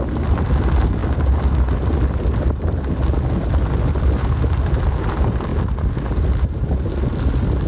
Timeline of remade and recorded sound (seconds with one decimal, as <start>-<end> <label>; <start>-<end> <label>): 0.0-7.7 recorded